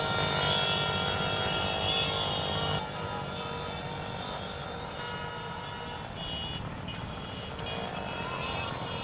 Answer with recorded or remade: recorded